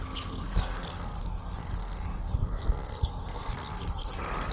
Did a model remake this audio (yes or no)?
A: yes